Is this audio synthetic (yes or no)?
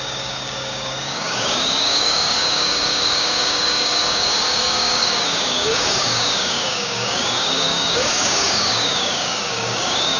yes